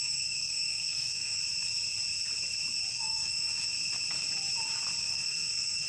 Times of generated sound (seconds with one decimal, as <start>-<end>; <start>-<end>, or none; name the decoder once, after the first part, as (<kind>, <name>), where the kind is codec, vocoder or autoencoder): 0.0-1.4 (codec, SNAC); 2.9-3.5; 5.0-5.9